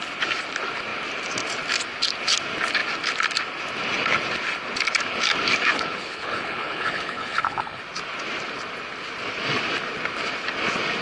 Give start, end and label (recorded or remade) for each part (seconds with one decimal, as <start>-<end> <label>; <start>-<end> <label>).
0.0-5.7 recorded; 5.7-7.8 remade; 7.8-11.0 recorded